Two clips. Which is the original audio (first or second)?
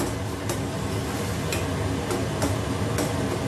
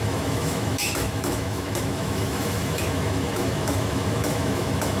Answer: first